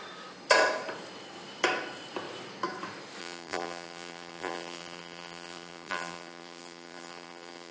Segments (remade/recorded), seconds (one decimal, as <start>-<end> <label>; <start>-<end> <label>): 0.0-3.2 recorded; 3.2-7.7 remade